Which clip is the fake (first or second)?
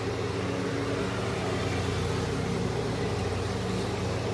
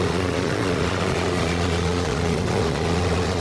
second